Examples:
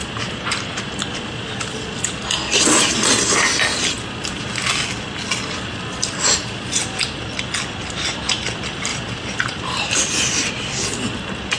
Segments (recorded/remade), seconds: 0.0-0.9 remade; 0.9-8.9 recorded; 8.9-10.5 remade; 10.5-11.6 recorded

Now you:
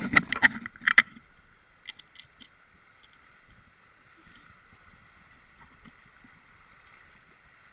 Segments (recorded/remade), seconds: 0.0-7.7 remade